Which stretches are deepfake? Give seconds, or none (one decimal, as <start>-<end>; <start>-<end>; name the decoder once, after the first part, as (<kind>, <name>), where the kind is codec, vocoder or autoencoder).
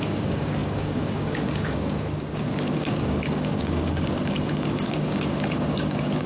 0.0-6.3 (codec, DAC)